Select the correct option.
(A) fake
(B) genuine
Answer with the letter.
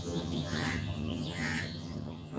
A